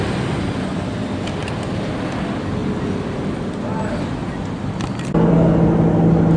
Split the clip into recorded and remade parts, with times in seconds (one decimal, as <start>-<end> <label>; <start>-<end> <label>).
0.0-6.4 recorded